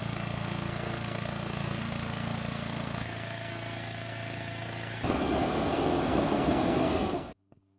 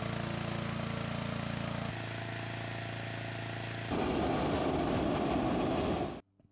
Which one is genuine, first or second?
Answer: second